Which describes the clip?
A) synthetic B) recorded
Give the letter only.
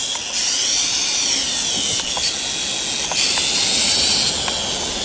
B